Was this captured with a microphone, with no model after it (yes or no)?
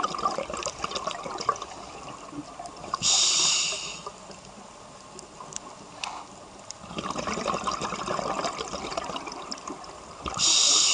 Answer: no